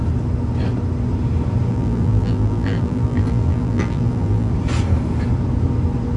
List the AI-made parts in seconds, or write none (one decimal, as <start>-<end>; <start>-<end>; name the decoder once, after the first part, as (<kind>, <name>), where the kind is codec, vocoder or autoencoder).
1.7-4.5 (vocoder, BigVGAN v2)